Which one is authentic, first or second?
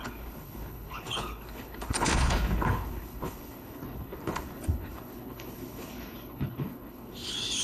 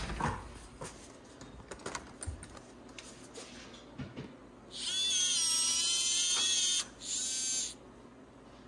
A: second